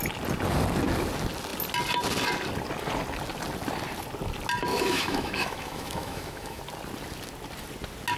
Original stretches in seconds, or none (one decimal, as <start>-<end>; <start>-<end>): 0.0-4.7; 6.6-8.2